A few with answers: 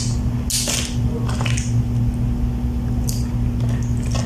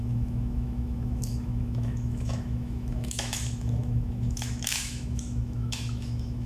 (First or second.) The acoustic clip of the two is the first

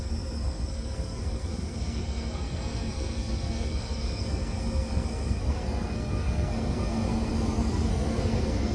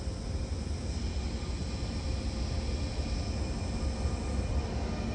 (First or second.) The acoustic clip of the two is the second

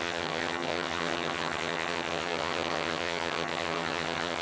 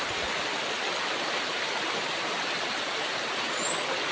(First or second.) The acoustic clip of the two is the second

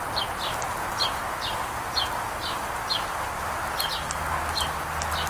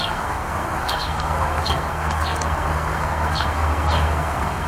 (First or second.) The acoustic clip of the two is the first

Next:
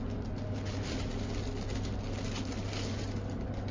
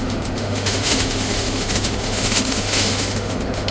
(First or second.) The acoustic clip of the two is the first